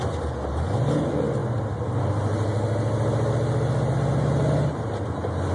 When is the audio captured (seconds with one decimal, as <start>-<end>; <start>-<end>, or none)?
0.0-5.5